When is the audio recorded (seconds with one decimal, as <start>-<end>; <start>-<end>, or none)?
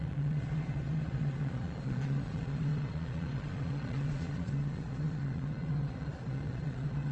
none